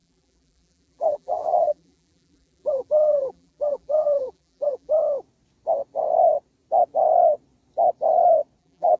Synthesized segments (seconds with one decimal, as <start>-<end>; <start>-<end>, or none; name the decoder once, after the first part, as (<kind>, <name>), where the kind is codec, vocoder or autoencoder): 0.0-5.0 (vocoder, BigVGAN v2); 8.6-9.0